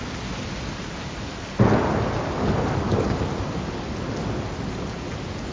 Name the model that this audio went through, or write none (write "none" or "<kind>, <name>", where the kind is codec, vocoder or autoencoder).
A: none